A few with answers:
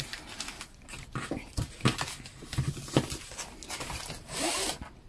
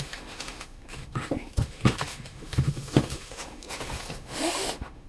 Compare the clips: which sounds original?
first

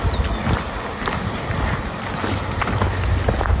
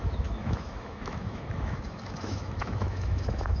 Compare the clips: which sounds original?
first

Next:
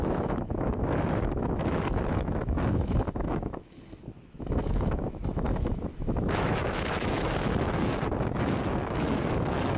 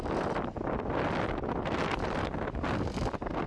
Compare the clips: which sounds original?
second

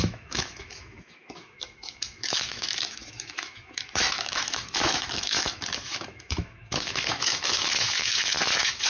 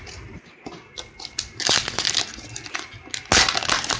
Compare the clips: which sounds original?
second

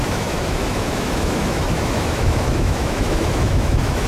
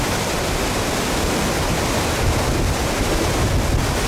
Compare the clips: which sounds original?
second